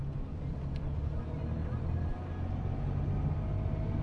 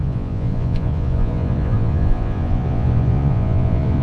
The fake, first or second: second